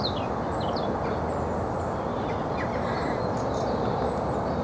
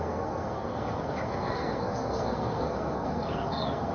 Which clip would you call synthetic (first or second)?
second